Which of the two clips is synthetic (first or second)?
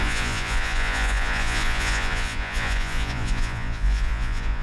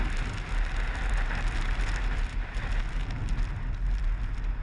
first